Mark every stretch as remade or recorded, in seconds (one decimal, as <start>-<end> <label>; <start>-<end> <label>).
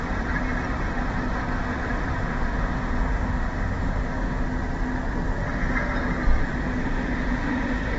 0.0-2.2 recorded; 2.2-4.4 remade; 4.4-6.8 recorded; 6.8-8.0 remade